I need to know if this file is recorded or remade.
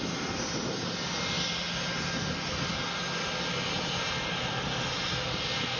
recorded